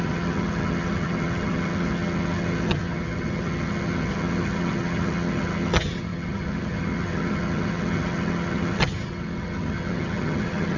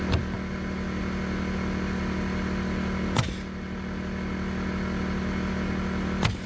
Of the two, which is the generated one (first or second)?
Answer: first